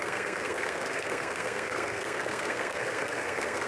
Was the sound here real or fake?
fake